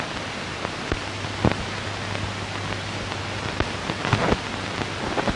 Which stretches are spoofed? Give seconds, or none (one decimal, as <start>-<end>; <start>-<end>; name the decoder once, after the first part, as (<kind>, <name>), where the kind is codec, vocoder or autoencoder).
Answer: 1.0-4.2 (vocoder, BigVGAN v2)